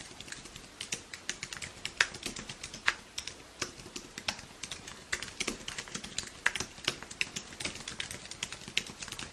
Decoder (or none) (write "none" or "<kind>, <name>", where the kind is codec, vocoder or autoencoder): none